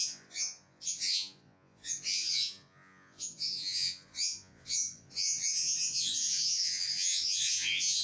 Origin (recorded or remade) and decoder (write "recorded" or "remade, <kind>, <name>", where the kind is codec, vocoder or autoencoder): remade, vocoder, Vocos